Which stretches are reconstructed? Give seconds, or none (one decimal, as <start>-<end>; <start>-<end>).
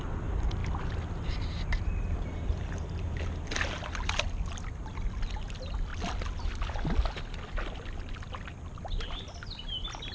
none